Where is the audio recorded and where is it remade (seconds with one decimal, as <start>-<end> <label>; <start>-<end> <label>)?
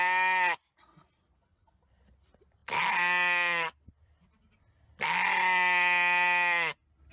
0.0-7.1 recorded